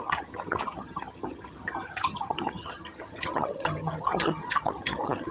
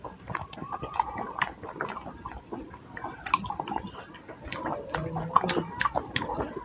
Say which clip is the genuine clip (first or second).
second